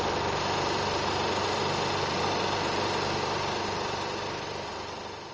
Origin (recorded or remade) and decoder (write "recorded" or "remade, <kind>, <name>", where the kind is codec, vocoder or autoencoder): recorded